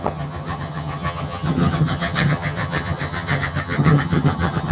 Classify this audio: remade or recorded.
remade